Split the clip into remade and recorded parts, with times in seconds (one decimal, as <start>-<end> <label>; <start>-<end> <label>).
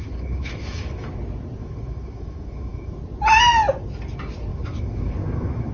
0.0-1.1 remade; 1.1-1.6 recorded; 1.6-3.0 remade; 3.0-4.5 recorded; 4.5-5.7 remade